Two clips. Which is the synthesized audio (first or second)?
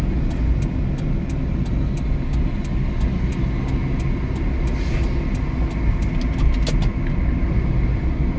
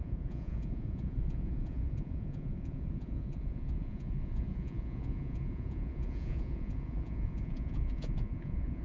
second